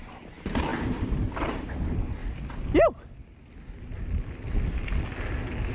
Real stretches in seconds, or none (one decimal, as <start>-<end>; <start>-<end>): 2.2-5.7